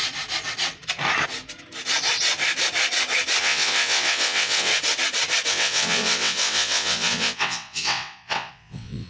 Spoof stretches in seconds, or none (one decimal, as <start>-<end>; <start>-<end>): 3.4-4.7; 5.5-9.1